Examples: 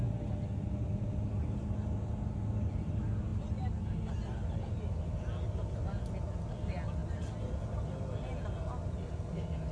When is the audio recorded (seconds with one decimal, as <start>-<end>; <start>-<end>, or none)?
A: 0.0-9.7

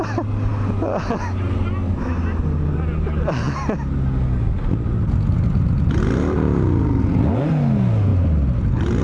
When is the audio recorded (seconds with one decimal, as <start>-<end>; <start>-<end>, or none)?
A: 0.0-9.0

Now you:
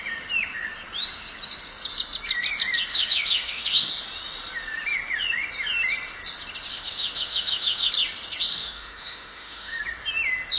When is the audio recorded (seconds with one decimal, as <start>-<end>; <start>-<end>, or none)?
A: 0.0-2.9; 3.9-6.7; 7.9-8.5; 9.8-10.6

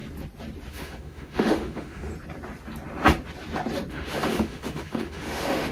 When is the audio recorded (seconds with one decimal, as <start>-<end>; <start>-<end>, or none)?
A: 0.0-0.7; 2.1-3.9

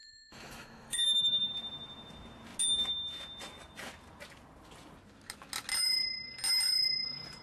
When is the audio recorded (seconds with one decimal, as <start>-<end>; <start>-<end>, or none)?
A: 1.5-7.4